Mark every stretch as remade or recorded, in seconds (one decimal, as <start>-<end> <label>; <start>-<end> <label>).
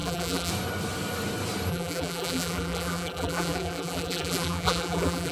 0.0-0.5 remade; 0.5-1.7 recorded; 1.7-5.3 remade